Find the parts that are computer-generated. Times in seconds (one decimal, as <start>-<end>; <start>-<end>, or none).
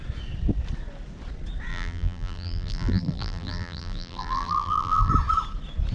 1.7-5.1